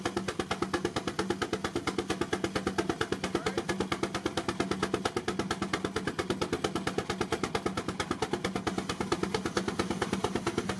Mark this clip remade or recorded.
recorded